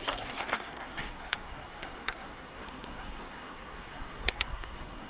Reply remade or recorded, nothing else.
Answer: remade